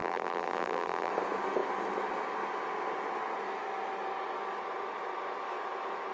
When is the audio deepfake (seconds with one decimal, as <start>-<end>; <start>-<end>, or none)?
0.0-1.1